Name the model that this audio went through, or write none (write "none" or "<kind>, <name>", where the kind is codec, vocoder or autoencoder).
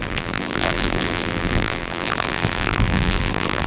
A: vocoder, BigVGAN v2